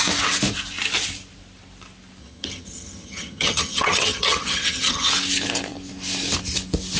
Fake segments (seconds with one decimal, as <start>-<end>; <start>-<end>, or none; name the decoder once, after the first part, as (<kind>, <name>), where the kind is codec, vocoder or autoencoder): 2.2-5.1 (vocoder, HiFi-GAN)